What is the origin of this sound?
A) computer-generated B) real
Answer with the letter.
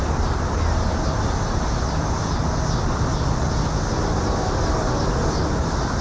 B